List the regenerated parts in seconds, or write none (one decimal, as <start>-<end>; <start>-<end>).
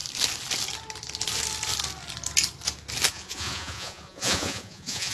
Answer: 3.1-5.1